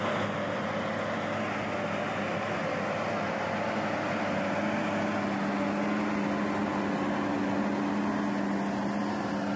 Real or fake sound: real